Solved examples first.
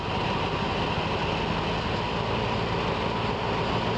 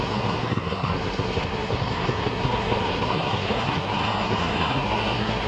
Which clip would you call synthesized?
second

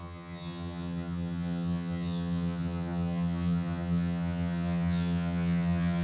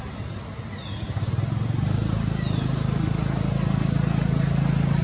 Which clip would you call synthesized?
first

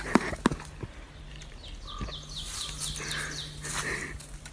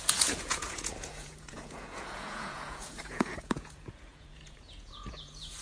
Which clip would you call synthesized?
second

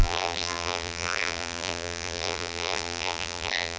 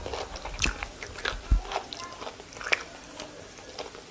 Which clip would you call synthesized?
first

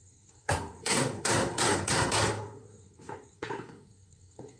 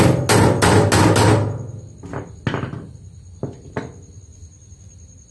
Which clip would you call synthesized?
first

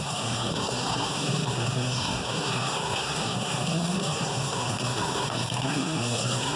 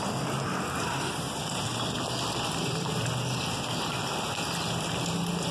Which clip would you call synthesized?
first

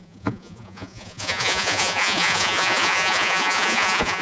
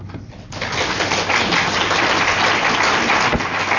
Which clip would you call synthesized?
first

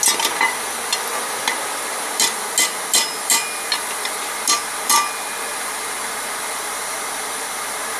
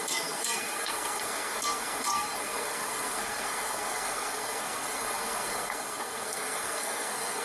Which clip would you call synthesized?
second